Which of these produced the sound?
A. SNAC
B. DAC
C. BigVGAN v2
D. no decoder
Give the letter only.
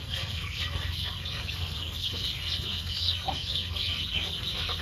A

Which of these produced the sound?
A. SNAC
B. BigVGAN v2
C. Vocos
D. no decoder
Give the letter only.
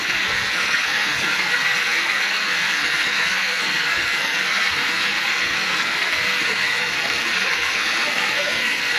A